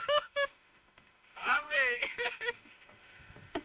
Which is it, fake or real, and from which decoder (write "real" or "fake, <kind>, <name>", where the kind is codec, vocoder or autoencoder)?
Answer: fake, autoencoder, DAC-VAE